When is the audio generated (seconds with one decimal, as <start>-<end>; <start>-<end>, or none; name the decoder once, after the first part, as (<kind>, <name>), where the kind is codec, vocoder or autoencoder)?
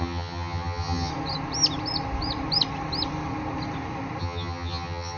0.0-1.1 (vocoder, HiFi-GAN); 4.2-5.2